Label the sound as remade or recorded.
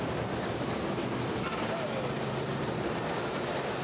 recorded